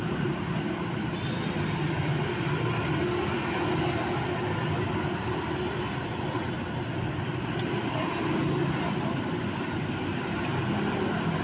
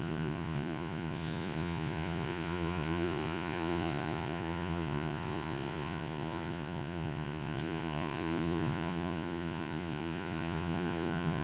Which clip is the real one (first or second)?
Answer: first